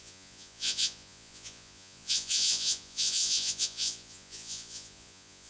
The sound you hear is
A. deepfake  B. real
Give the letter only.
A